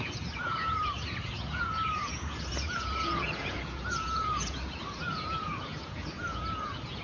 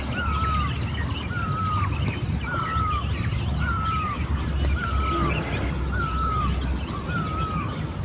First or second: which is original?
second